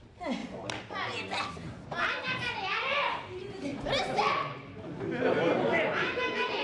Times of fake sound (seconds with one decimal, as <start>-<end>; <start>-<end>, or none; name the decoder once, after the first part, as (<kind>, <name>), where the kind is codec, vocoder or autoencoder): none